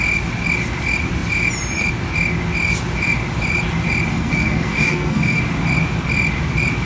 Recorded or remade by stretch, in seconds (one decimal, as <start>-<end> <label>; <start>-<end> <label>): 0.0-4.1 recorded; 4.1-5.4 remade; 5.4-6.9 recorded